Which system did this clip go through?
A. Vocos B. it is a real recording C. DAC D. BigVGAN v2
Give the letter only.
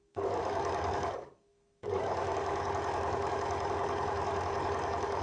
C